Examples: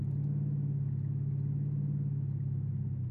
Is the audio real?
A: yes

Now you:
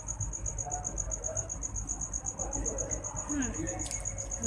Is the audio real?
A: yes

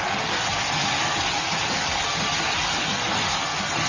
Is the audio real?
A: yes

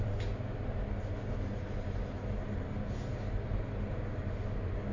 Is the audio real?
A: yes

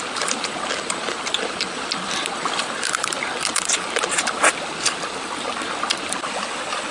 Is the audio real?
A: yes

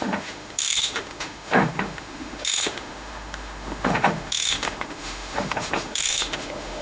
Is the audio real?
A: no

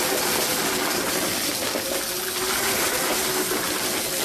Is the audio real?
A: yes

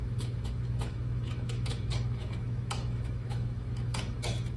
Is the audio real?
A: no